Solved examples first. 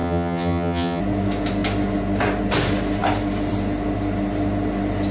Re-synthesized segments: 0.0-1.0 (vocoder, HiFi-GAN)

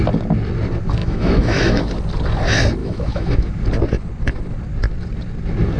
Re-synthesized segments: 1.0-1.8 (autoencoder, DAC-VAE); 2.8-3.5

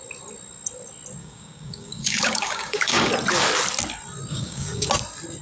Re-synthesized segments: 1.2-3.1 (codec, DAC); 4.3-4.9

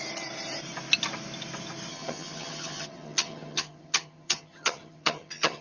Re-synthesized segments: 1.9-5.6 (vocoder, HiFi-GAN)

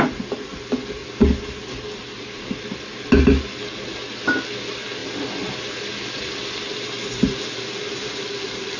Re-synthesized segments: none

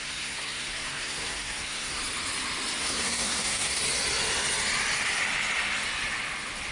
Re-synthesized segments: 0.0-2.0 (codec, SNAC); 2.8-3.8